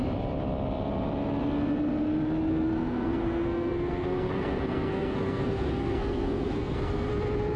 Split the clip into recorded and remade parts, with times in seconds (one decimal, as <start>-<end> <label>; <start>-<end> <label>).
0.0-2.5 recorded; 2.5-7.1 remade; 7.1-7.6 recorded